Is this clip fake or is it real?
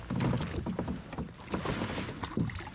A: real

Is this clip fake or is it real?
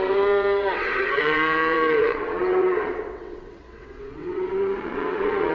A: fake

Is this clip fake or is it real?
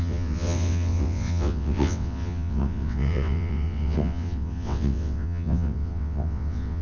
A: fake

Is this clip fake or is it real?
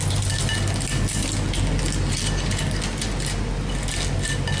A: real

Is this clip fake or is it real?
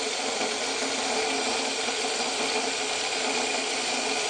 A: real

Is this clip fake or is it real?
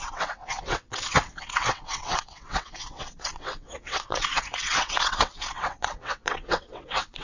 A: fake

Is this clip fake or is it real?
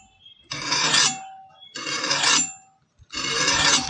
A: real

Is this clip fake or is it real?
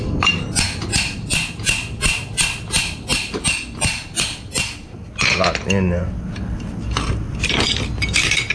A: real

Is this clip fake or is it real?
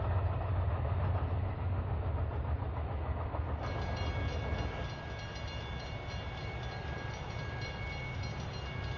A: real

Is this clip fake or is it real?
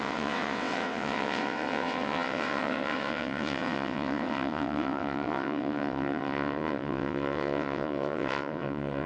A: fake